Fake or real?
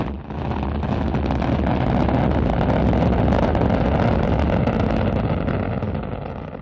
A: real